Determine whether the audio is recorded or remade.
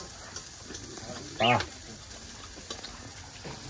recorded